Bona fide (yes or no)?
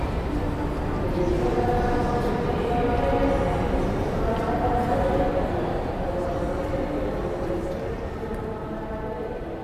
yes